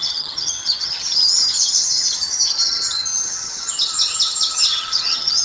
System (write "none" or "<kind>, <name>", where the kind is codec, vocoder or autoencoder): vocoder, HiFi-GAN